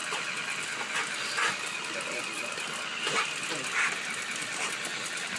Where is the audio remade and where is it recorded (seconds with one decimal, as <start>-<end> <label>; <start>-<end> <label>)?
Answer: 0.0-5.4 recorded